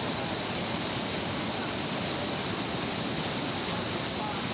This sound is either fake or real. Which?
real